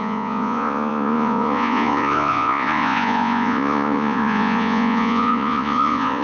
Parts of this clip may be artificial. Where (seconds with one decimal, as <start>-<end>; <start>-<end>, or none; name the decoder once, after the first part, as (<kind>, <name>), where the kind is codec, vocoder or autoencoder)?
0.0-6.2 (vocoder, Vocos)